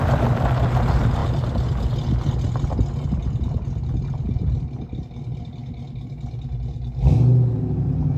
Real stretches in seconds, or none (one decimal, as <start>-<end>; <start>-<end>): 0.0-8.2